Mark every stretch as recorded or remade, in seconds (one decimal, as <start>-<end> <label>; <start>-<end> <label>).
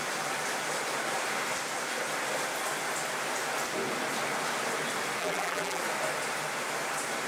0.0-5.2 recorded; 5.2-5.8 remade; 5.8-7.3 recorded